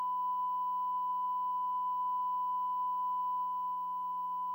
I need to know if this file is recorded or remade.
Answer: recorded